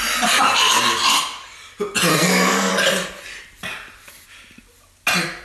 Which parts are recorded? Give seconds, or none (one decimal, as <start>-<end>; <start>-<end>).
0.0-2.1; 2.7-5.4